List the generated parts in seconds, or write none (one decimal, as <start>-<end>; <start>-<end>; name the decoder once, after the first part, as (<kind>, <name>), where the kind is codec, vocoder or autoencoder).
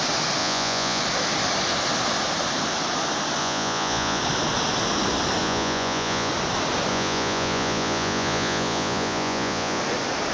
0.4-1.0 (vocoder, Vocos); 3.4-4.2; 5.4-6.3; 6.9-9.8